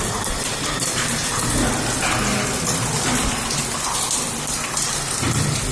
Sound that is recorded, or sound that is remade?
recorded